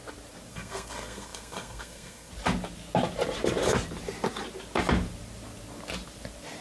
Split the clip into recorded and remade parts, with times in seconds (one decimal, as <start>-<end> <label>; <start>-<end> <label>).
0.0-0.5 recorded; 0.5-2.3 remade; 2.3-6.6 recorded